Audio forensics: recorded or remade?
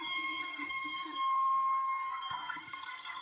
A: remade